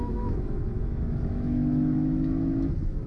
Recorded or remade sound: remade